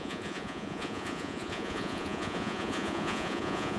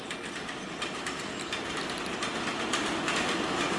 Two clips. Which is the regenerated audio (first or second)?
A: first